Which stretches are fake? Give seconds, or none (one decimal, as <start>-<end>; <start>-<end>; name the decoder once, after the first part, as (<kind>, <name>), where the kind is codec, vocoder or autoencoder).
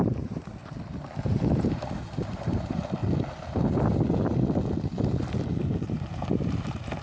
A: 0.0-0.6 (vocoder, BigVGAN v2); 1.5-3.0; 5.9-7.0